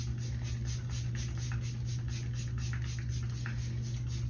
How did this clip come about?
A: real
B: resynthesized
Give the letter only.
A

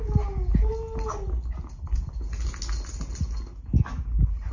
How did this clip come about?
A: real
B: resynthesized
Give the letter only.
A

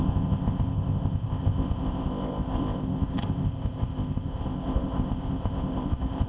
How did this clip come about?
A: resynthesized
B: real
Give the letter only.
A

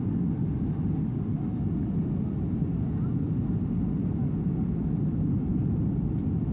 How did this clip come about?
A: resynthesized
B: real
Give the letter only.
B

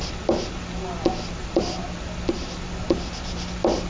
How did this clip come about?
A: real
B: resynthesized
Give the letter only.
A